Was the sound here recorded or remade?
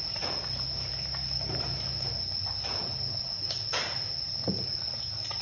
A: recorded